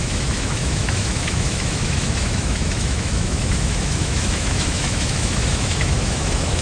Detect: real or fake fake